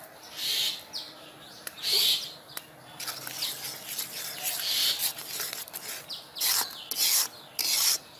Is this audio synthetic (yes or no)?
no